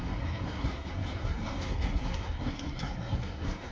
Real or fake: fake